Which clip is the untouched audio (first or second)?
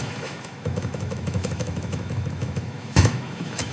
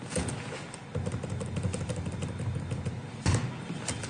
second